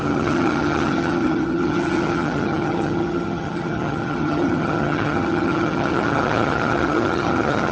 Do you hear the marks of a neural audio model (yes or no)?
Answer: yes